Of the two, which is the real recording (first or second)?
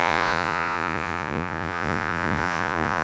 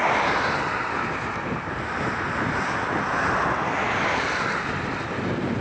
second